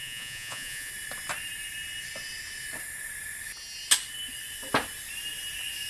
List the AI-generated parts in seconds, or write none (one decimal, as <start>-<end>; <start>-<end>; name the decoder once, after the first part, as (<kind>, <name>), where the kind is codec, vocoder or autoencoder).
0.0-0.9 (vocoder, Vocos)